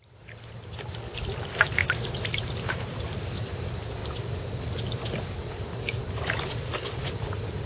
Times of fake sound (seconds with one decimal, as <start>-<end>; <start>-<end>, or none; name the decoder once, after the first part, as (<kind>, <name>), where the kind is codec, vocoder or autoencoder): none